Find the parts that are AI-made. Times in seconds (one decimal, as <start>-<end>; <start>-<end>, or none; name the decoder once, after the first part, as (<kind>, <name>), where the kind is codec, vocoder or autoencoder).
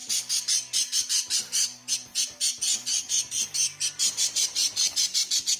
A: 0.0-2.1 (vocoder, BigVGAN v2); 3.5-5.6